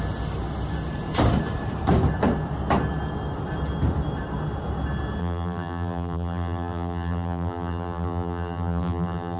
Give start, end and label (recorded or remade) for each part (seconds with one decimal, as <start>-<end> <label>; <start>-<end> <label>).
0.0-5.2 recorded; 5.2-9.4 remade